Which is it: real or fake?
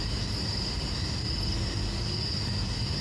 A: real